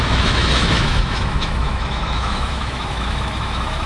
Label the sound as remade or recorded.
remade